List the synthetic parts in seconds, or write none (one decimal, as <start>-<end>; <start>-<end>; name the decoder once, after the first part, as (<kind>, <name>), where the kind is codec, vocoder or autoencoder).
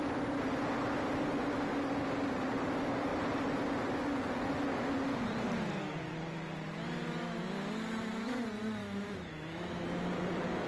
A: 8.8-9.8 (autoencoder, DAC-VAE)